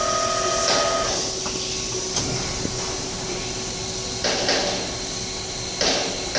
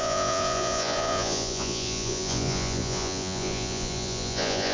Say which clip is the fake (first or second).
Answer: second